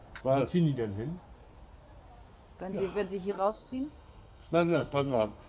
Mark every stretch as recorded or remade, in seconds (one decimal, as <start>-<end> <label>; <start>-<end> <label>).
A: 0.0-3.3 recorded; 3.3-5.5 remade